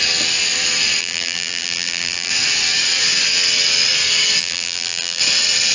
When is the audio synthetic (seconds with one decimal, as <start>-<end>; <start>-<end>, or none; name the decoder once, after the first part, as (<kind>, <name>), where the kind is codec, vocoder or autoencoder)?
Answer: 1.0-2.3 (vocoder, BigVGAN v2); 4.4-5.2